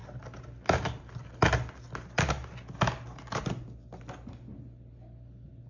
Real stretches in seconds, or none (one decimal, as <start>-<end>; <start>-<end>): 0.0-5.7